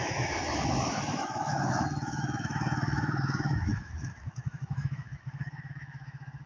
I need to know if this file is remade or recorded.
remade